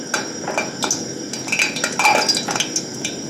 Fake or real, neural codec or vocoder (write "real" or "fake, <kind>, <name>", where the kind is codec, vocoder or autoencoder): real